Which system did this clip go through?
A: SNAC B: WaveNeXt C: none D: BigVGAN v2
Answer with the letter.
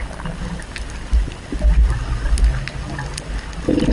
C